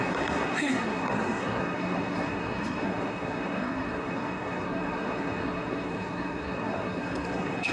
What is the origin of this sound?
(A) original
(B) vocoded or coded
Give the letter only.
B